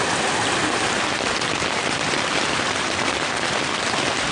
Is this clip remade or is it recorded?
recorded